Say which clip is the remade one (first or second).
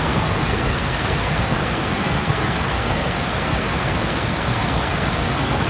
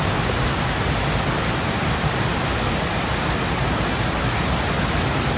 first